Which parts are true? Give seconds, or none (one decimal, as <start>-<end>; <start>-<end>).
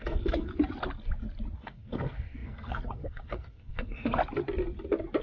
0.5-1.6; 4.2-5.2